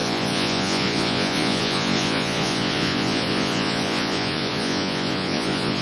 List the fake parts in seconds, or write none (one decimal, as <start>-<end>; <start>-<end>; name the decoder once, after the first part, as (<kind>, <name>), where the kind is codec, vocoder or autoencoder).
0.0-5.8 (vocoder, Vocos)